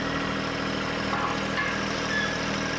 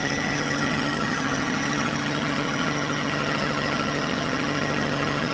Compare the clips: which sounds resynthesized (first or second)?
second